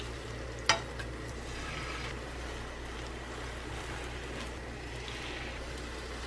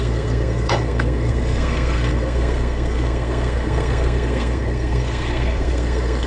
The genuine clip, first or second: first